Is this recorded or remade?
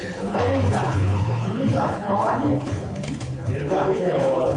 remade